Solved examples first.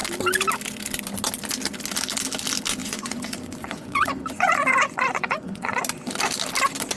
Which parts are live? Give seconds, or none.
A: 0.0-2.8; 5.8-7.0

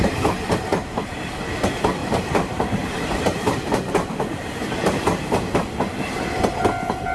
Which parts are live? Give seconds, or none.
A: 0.0-2.0; 6.0-7.1